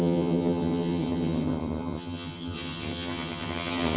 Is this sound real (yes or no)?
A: no